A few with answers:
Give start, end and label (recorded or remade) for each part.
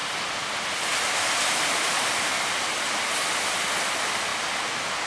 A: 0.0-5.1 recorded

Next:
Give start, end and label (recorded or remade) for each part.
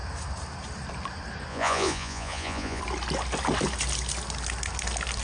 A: 0.0-1.5 recorded; 1.5-2.8 remade; 2.8-5.2 recorded